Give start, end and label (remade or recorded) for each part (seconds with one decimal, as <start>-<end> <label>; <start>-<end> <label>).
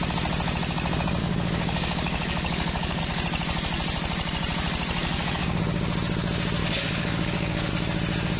0.0-1.2 recorded; 1.2-3.0 remade; 3.0-5.0 recorded; 5.0-5.6 remade; 5.6-6.6 recorded; 6.6-7.7 remade; 7.7-8.4 recorded